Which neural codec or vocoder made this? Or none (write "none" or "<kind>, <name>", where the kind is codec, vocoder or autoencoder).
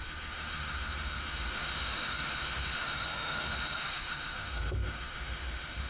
autoencoder, DAC-VAE